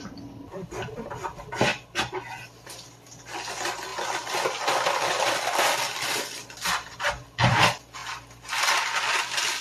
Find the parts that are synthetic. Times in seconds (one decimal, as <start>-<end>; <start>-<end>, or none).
none